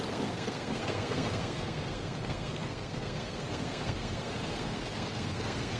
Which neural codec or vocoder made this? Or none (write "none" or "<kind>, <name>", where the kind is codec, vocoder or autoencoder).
codec, SNAC